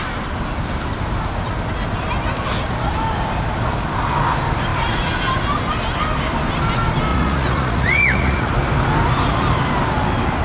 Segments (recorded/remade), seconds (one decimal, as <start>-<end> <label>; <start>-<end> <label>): 0.0-7.1 recorded; 7.1-8.5 remade; 8.5-10.4 recorded